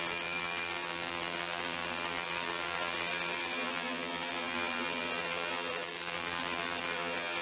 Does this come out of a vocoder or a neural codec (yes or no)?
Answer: yes